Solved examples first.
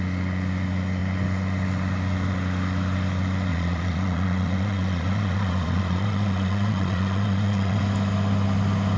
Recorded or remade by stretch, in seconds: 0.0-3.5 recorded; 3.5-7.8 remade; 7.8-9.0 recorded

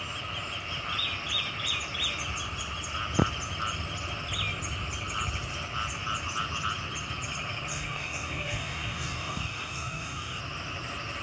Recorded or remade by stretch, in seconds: 0.0-7.7 recorded; 7.7-10.4 remade; 10.4-11.2 recorded

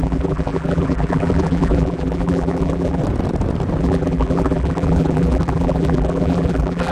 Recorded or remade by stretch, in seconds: 0.0-3.0 remade; 3.0-3.8 recorded; 3.8-6.9 remade

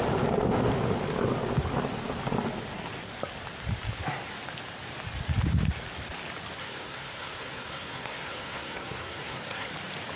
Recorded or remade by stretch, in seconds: 0.0-6.6 recorded; 6.6-9.7 remade; 9.7-10.2 recorded

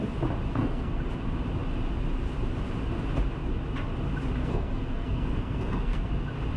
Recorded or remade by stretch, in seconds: 0.0-0.5 recorded; 0.5-1.0 remade; 1.0-4.4 recorded; 4.4-6.1 remade; 6.1-6.6 recorded

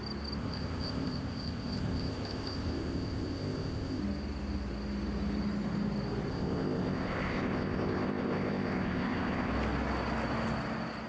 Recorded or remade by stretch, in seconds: 0.0-0.4 recorded; 0.4-4.0 remade; 4.0-6.3 recorded; 6.3-9.5 remade; 9.5-11.1 recorded

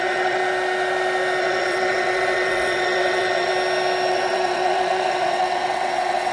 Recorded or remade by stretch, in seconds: 0.0-0.4 remade; 0.4-1.4 recorded; 1.4-3.5 remade; 3.5-4.1 recorded; 4.1-6.3 remade

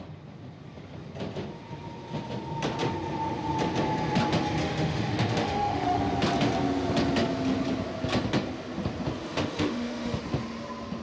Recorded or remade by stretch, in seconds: 0.0-4.6 recorded; 4.6-6.0 remade; 6.0-9.2 recorded; 9.2-10.2 remade; 10.2-11.0 recorded